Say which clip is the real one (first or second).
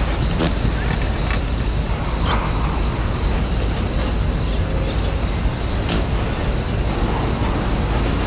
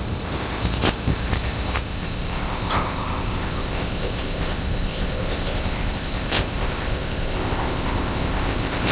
first